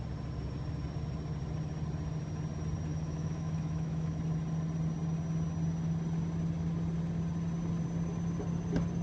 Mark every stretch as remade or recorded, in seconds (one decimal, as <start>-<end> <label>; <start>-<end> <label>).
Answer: 0.0-2.9 recorded; 2.9-4.2 remade; 4.2-9.0 recorded